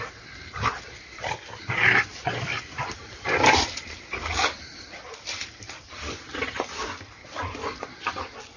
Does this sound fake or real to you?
fake